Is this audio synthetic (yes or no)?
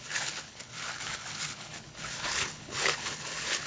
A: yes